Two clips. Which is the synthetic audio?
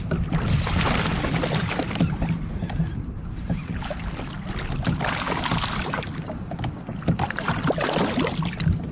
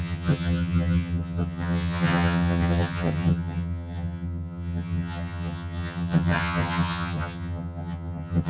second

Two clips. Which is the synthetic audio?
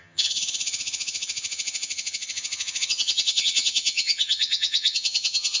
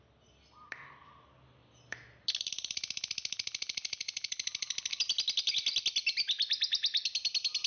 first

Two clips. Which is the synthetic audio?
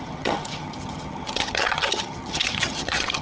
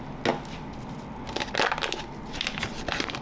first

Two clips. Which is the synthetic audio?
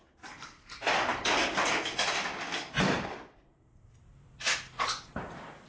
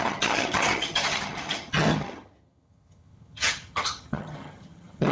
second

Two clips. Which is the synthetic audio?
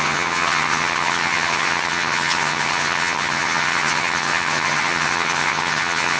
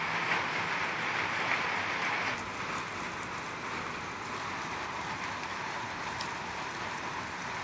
first